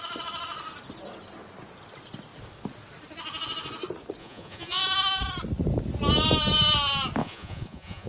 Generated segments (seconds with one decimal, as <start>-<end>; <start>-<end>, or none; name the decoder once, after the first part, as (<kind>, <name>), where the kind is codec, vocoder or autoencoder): 4.2-4.8 (vocoder, Vocos); 7.2-8.1